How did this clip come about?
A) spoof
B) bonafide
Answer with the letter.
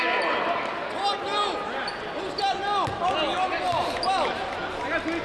B